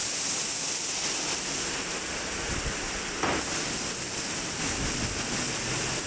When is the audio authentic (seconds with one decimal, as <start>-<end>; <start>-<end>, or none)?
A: 0.0-6.1